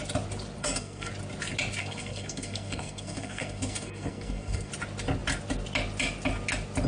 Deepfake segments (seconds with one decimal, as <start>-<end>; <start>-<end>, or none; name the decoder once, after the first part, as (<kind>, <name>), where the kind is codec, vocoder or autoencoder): 0.6-1.1 (codec, SNAC); 1.8-4.7